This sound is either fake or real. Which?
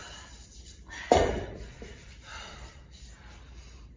fake